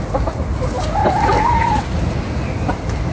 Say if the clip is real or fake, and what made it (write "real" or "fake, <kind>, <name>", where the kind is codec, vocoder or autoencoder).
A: real